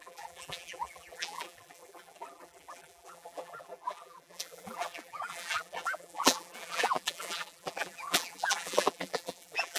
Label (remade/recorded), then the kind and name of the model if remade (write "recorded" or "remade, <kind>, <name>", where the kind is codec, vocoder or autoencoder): remade, vocoder, BigVGAN v2